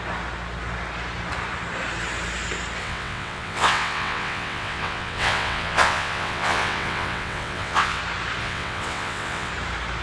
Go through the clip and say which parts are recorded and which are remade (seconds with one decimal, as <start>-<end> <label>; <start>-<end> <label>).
0.0-2.8 recorded; 2.8-8.0 remade; 8.0-8.4 recorded; 8.4-9.5 remade; 9.5-10.0 recorded